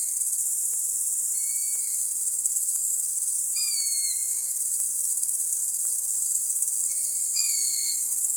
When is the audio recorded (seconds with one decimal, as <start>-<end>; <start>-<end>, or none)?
0.4-1.8; 3.4-4.3